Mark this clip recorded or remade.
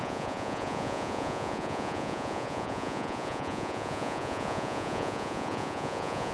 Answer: remade